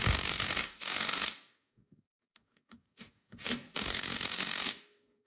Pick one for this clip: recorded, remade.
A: remade